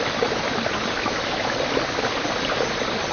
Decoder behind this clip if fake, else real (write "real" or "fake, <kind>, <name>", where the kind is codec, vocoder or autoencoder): real